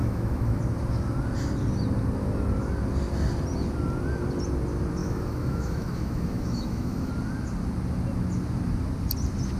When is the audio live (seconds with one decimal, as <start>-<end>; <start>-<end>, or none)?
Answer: 0.6-5.0; 7.1-9.6